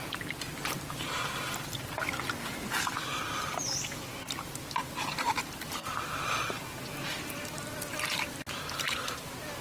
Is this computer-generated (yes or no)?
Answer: yes